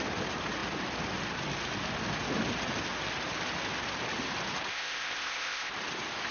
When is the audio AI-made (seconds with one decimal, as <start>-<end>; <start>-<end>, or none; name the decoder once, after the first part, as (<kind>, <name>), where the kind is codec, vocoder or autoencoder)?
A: 4.7-5.7 (codec, ZipCodec)